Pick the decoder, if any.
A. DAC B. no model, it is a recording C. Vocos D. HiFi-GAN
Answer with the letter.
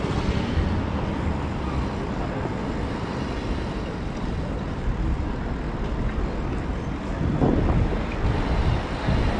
B